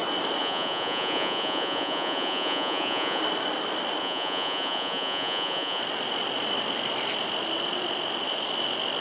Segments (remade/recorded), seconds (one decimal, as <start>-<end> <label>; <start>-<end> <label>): 0.0-0.4 recorded; 0.4-3.2 remade; 3.2-4.0 recorded; 4.0-5.8 remade; 5.8-9.0 recorded